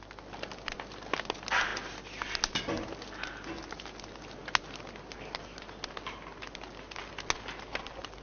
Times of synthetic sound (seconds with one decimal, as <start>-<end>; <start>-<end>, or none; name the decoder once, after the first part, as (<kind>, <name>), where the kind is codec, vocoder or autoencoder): none